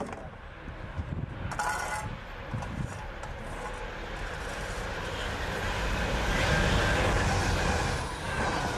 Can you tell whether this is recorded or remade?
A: recorded